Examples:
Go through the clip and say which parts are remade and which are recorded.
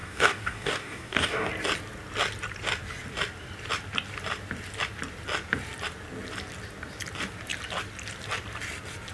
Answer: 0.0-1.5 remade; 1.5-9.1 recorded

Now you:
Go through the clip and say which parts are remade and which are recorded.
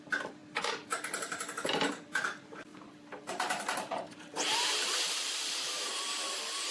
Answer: 0.0-0.4 remade; 0.4-1.9 recorded; 1.9-6.7 remade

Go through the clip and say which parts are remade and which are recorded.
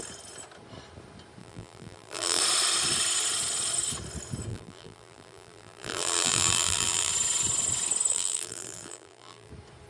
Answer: 0.0-1.4 recorded; 1.4-2.4 remade; 2.4-4.5 recorded; 4.5-7.1 remade; 7.1-8.1 recorded; 8.1-9.5 remade; 9.5-9.9 recorded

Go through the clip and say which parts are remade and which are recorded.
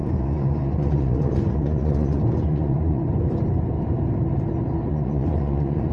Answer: 0.0-3.0 remade; 3.0-4.9 recorded; 4.9-5.9 remade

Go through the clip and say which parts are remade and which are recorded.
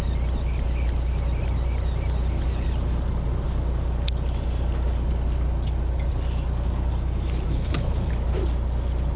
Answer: 0.0-7.5 recorded; 7.5-8.1 remade; 8.1-9.2 recorded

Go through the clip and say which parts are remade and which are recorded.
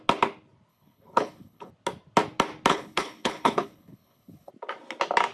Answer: 0.0-0.7 recorded; 0.7-1.7 remade; 1.7-2.7 recorded; 2.7-4.5 remade; 4.5-5.3 recorded